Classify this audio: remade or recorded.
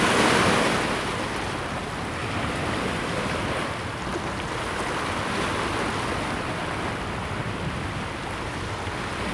recorded